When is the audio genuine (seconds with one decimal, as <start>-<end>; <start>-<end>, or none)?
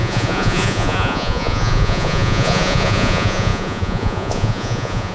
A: none